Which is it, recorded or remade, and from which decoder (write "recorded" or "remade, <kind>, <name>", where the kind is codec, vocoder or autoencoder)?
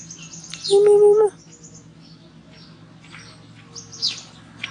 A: recorded